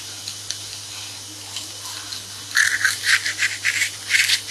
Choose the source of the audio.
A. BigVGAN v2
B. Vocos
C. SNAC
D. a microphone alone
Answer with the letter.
D